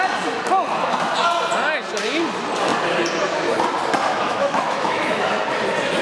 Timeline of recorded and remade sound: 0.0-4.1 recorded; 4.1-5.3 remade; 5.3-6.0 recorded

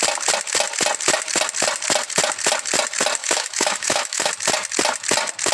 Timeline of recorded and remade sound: 0.0-3.2 recorded; 3.2-4.3 remade; 4.3-5.5 recorded

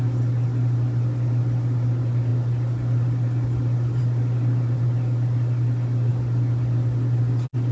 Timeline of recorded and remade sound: 0.0-7.7 recorded

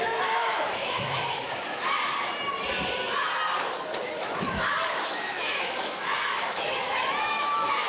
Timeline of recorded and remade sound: 0.0-2.0 remade; 2.0-4.0 recorded; 4.0-7.9 remade

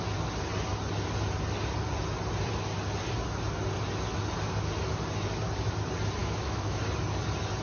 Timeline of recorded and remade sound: 0.0-6.2 recorded; 6.2-6.8 remade; 6.8-7.6 recorded